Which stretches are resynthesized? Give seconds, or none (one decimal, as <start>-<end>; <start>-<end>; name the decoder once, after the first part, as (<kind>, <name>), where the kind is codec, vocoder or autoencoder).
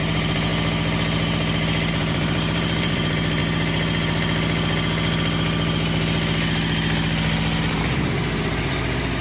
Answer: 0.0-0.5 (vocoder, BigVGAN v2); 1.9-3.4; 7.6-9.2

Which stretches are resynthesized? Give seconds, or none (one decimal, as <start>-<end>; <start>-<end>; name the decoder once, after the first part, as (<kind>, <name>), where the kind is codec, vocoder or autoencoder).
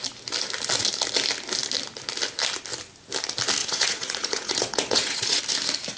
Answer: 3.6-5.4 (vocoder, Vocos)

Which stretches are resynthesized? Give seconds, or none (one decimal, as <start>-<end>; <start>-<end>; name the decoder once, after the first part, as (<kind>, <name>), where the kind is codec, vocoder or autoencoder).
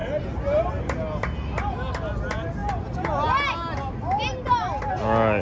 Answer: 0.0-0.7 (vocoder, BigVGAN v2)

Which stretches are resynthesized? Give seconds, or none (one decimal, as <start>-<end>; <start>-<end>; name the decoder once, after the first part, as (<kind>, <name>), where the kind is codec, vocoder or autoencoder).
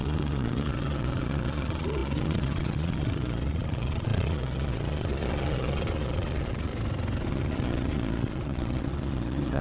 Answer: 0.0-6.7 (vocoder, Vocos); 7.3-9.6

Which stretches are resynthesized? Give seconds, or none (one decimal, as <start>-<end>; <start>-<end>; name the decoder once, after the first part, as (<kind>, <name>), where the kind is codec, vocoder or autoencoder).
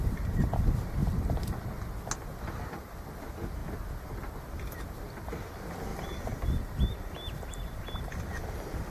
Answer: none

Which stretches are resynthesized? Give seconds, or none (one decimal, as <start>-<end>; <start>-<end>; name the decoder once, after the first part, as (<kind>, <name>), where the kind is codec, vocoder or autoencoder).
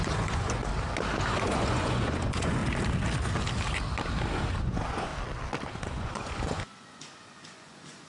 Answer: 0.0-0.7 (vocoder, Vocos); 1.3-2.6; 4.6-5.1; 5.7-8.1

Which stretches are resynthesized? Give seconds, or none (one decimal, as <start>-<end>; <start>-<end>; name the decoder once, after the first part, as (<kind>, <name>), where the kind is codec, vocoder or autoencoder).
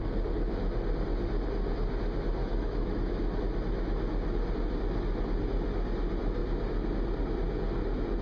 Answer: 2.4-3.4 (autoencoder, DAC-VAE)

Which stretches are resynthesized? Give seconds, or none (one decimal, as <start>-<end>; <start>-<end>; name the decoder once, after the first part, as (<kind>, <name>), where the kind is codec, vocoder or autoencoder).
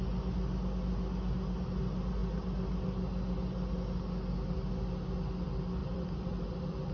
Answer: 5.8-6.9 (vocoder, BigVGAN v2)